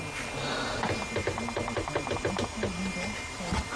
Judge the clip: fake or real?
real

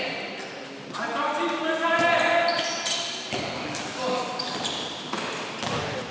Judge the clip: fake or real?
real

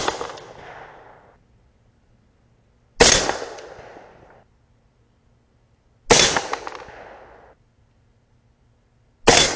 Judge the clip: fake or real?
real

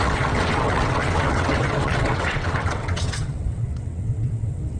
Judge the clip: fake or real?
fake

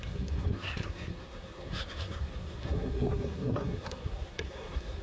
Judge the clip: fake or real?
fake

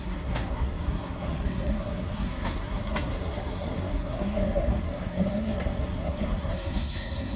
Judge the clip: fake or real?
fake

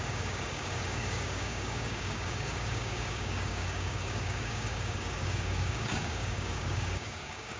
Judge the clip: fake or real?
fake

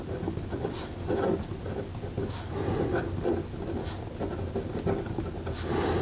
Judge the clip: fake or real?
real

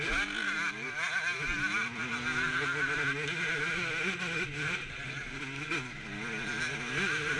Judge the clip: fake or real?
real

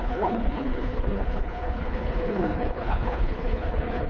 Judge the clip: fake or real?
fake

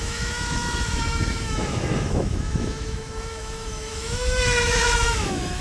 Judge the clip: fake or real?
fake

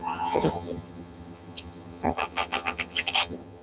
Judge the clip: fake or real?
fake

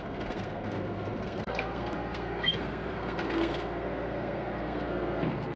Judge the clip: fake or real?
fake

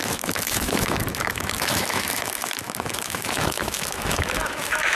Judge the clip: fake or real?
fake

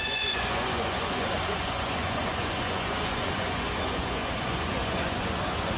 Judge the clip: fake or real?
fake